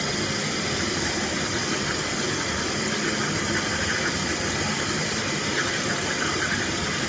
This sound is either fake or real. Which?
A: real